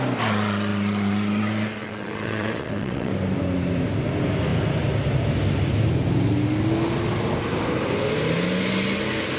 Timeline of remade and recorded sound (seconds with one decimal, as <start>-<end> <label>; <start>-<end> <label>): 0.0-1.8 recorded; 1.8-3.1 remade; 3.1-9.4 recorded